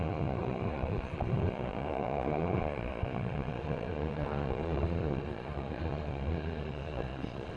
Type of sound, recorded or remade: remade